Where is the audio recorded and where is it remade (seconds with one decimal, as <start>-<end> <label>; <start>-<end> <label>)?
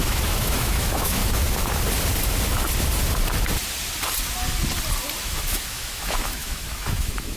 0.0-1.2 remade; 1.2-5.2 recorded; 5.2-7.4 remade